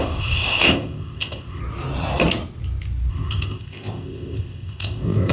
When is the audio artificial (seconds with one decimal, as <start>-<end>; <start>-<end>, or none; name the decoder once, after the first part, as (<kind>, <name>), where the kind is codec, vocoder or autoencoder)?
0.0-1.6 (codec, ZipCodec); 3.1-5.3